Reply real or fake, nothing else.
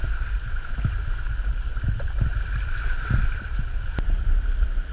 real